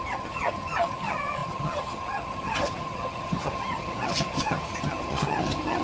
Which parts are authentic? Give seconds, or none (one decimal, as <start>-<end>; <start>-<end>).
none